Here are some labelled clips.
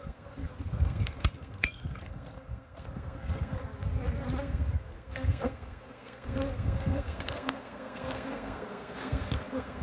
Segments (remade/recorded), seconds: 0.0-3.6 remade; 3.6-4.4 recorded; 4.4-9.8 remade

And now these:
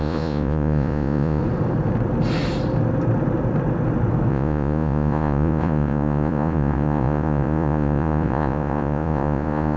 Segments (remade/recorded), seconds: 0.0-1.4 remade; 1.4-4.3 recorded; 4.3-9.8 remade

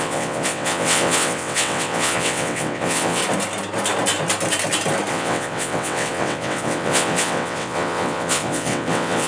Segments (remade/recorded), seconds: 0.0-3.2 remade; 3.2-5.1 recorded; 5.1-9.3 remade

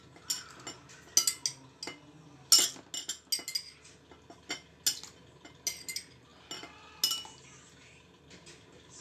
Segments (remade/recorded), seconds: 0.0-9.0 recorded

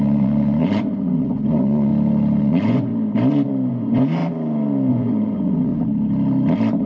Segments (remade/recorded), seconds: 0.0-1.9 remade; 1.9-2.4 recorded; 2.4-2.9 remade; 2.9-3.7 recorded; 3.7-4.2 remade; 4.2-4.9 recorded; 4.9-5.7 remade; 5.7-6.9 recorded

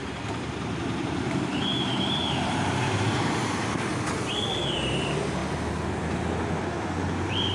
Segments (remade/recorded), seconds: 0.0-3.9 remade; 3.9-4.5 recorded; 4.5-5.4 remade; 5.4-6.6 recorded; 6.6-7.5 remade

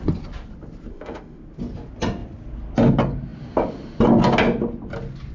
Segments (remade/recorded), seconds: 0.0-0.9 recorded; 0.9-1.4 remade; 1.4-5.3 recorded

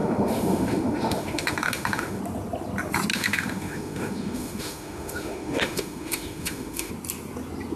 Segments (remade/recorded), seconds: 0.0-2.2 remade; 2.2-3.1 recorded; 3.1-6.9 remade; 6.9-7.8 recorded